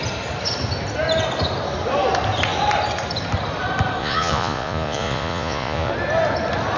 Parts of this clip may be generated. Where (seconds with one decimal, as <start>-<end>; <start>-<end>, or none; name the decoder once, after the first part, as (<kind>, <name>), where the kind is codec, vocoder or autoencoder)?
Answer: 4.0-5.9 (vocoder, Vocos)